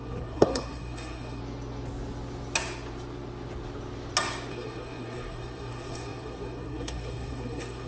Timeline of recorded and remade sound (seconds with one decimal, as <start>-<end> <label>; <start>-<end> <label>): 0.0-1.4 remade; 1.4-4.5 recorded; 4.5-7.9 remade